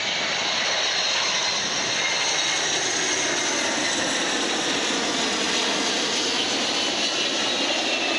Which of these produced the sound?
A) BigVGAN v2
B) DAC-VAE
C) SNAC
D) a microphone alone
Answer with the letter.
D